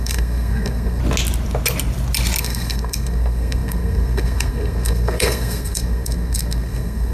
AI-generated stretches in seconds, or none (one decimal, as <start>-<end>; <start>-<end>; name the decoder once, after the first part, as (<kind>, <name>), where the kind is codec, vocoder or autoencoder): 0.0-1.0 (codec, SNAC); 2.4-7.1